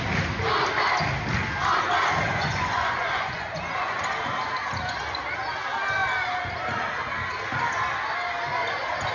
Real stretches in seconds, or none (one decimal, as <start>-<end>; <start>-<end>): 0.0-2.3; 4.0-9.1